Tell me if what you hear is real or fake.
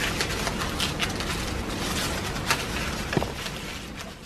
real